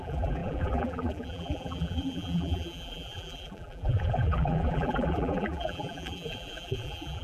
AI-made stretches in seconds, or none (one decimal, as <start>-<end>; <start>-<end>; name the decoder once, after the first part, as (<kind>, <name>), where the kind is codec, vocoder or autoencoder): 0.0-7.2 (vocoder, BigVGAN v2)